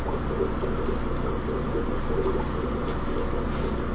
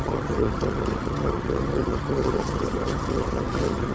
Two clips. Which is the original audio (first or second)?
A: first